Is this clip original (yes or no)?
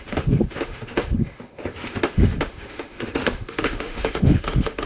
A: no